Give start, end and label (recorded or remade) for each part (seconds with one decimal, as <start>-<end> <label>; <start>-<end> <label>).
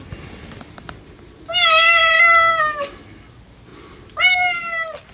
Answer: 0.0-5.1 recorded